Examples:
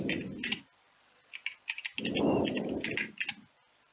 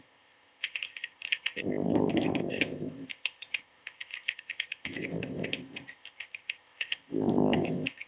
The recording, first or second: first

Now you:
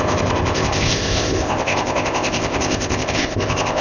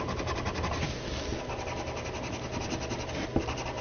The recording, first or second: second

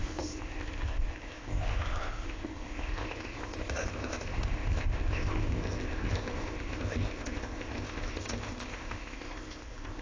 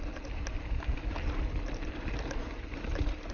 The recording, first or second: second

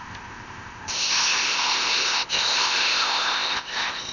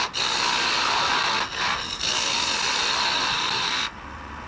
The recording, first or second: second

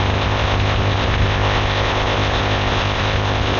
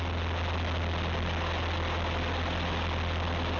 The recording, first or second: second